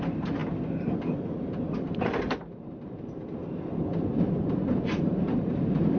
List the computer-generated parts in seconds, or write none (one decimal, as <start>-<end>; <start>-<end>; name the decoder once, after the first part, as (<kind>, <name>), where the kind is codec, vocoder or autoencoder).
0.0-0.4 (vocoder, BigVGAN v2); 4.0-6.0

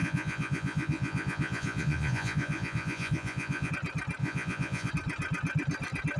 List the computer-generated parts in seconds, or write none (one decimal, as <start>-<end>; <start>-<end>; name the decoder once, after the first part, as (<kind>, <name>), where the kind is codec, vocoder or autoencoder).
0.0-3.7 (vocoder, Vocos); 4.2-4.9